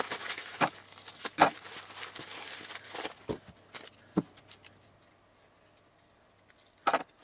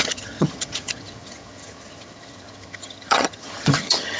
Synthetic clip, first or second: second